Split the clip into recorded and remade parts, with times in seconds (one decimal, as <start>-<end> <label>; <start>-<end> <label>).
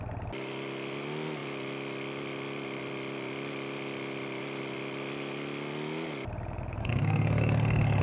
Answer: 0.0-6.8 recorded; 6.8-8.0 remade